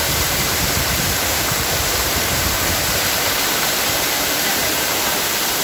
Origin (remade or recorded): remade